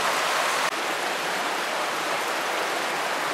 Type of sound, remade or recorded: recorded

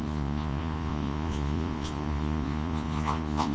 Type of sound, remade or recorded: remade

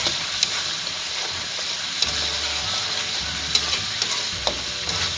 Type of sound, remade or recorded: recorded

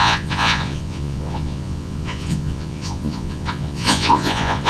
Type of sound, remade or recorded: remade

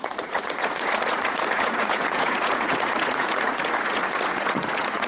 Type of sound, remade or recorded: remade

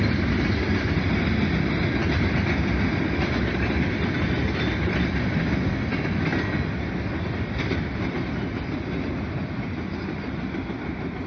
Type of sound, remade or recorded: recorded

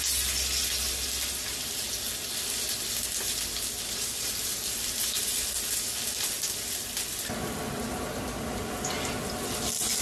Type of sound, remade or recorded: recorded